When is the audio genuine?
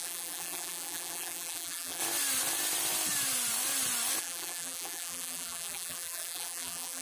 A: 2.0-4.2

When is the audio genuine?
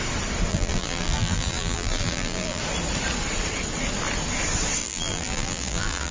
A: 0.0-0.5; 2.6-4.8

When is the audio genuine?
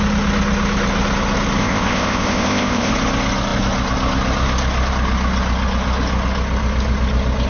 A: 0.0-1.6; 2.9-7.5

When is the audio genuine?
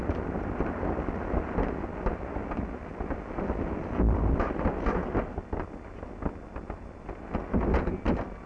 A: 0.0-8.5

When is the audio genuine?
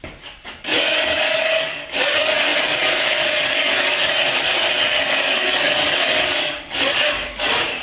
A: none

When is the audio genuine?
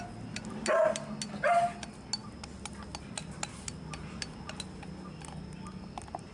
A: 0.0-6.3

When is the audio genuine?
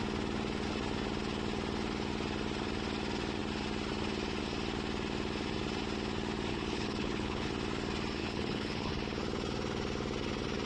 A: 0.0-6.5; 7.5-8.2; 8.9-10.7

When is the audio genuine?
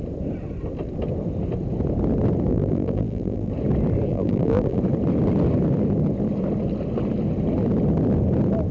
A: 0.0-2.5; 3.5-4.1; 4.8-8.7